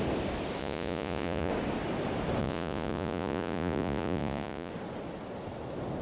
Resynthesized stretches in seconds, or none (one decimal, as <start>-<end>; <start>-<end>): 0.6-1.5; 2.4-4.7